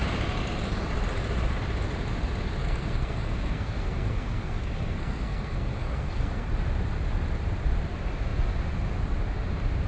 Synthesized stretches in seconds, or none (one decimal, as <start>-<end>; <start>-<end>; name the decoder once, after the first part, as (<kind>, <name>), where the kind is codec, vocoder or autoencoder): 2.6-6.5 (codec, SNAC)